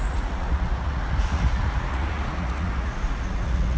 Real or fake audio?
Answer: fake